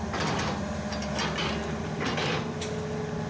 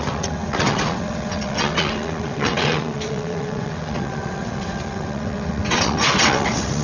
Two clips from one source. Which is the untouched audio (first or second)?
first